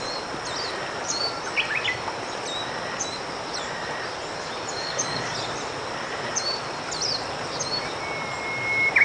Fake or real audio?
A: real